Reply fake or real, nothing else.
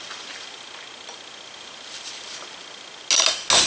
real